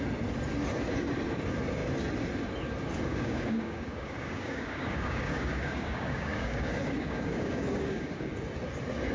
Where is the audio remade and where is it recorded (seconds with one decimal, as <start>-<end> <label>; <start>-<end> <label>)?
0.0-3.1 recorded; 3.1-8.3 remade; 8.3-9.1 recorded